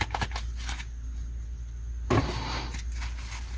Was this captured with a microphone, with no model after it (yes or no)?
yes